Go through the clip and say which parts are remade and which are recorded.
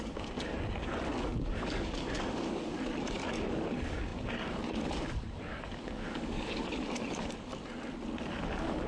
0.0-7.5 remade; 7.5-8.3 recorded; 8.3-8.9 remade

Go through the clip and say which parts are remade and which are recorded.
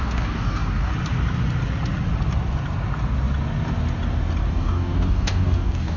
0.0-0.9 remade; 0.9-4.5 recorded; 4.5-6.0 remade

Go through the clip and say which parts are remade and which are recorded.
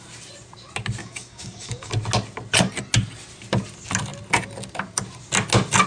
0.0-1.0 recorded; 1.0-1.9 remade; 1.9-5.9 recorded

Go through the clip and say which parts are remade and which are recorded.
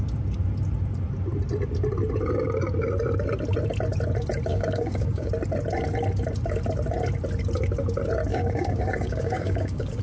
0.0-4.5 recorded; 4.5-5.3 remade; 5.3-8.3 recorded; 8.3-10.0 remade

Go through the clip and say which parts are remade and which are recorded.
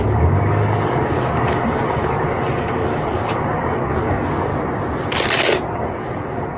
0.0-4.5 remade; 4.5-5.7 recorded; 5.7-6.6 remade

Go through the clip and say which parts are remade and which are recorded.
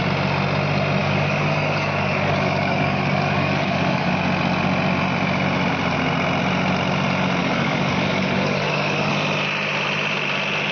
0.0-1.0 recorded; 1.0-4.1 remade; 4.1-7.4 recorded; 7.4-9.1 remade; 9.1-10.7 recorded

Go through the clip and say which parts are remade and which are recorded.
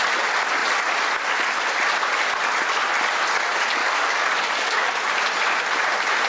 0.0-3.8 recorded; 3.8-4.9 remade; 4.9-6.3 recorded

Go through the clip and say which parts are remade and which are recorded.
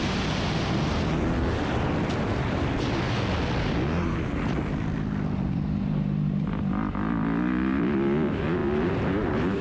0.0-9.6 recorded